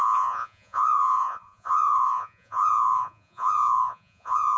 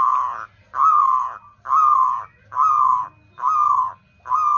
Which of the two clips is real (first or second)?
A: second